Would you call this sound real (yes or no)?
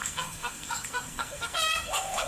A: no